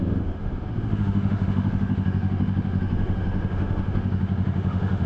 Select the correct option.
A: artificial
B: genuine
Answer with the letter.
A